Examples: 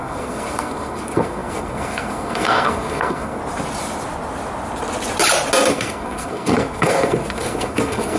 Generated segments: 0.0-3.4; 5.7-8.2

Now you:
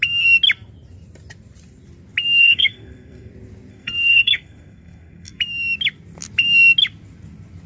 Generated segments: 2.4-3.3; 3.7-5.4